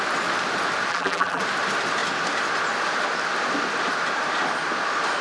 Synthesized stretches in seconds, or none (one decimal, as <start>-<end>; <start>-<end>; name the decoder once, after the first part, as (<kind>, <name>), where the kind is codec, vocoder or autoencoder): 0.9-1.4 (vocoder, BigVGAN v2)